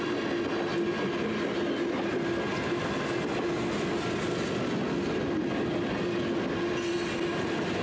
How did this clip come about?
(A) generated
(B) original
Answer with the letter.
B